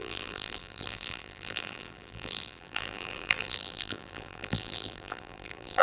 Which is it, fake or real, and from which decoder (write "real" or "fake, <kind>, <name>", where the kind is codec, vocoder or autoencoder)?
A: fake, vocoder, BigVGAN v2